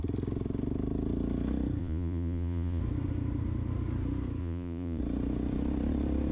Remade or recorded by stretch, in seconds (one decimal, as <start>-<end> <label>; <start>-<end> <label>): 0.0-1.8 recorded; 1.8-2.8 remade; 2.8-4.4 recorded; 4.4-5.0 remade; 5.0-6.3 recorded